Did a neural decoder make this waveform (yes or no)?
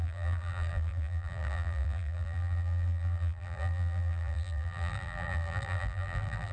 yes